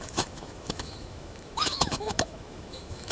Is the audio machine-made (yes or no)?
yes